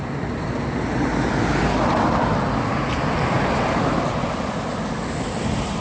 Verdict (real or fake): real